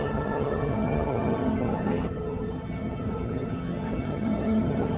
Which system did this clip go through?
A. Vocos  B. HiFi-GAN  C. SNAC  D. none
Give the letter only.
B